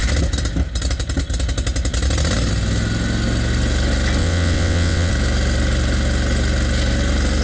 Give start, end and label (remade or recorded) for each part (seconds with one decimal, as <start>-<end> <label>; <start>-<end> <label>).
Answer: 0.0-4.2 recorded; 4.2-5.1 remade; 5.1-7.4 recorded